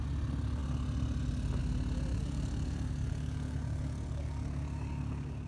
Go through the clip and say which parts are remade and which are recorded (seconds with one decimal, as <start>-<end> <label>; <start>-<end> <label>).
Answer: 0.0-2.1 recorded; 2.1-5.5 remade

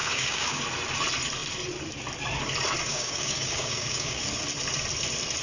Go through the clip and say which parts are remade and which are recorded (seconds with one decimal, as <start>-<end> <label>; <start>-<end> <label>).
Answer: 0.0-0.6 remade; 0.6-2.9 recorded; 2.9-4.2 remade; 4.2-5.4 recorded

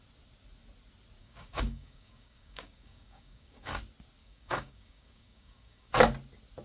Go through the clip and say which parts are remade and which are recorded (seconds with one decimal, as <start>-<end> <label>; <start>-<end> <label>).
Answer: 0.0-1.2 recorded; 1.2-3.8 remade; 3.8-4.2 recorded; 4.2-5.9 remade; 5.9-6.6 recorded

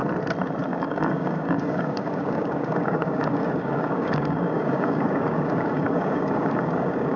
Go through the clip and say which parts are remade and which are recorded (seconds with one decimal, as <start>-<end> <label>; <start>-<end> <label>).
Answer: 0.0-0.7 recorded; 0.7-7.2 remade

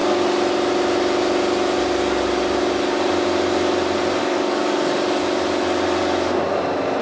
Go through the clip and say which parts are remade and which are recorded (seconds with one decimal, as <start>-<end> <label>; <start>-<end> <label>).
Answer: 0.0-4.2 recorded; 4.2-5.2 remade; 5.2-7.0 recorded